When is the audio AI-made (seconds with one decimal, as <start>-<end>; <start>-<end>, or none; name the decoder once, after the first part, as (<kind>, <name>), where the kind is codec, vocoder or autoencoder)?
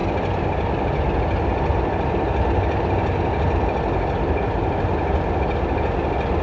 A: none